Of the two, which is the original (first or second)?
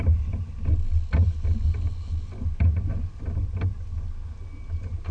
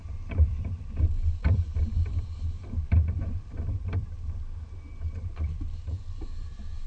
first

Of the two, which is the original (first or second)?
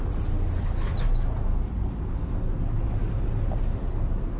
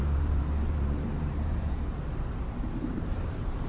first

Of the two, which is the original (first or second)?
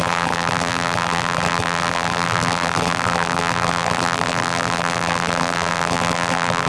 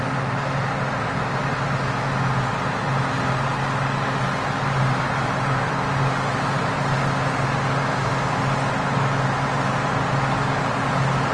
second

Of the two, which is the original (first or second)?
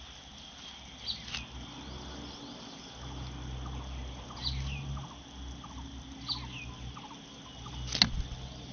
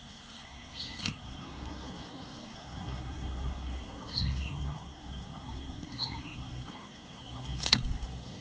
first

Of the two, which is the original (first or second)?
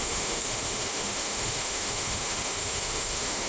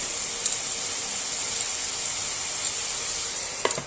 second